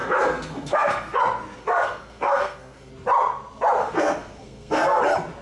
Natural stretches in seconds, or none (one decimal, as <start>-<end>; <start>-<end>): 1.2-1.6; 2.9-3.8; 5.0-5.4